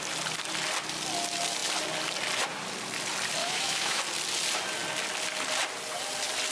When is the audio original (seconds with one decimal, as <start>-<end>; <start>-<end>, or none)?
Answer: 0.0-3.4; 4.0-6.5